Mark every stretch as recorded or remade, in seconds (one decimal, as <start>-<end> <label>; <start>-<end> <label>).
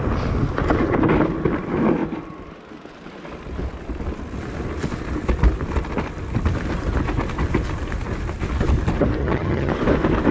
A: 0.0-9.2 recorded; 9.2-9.7 remade; 9.7-10.3 recorded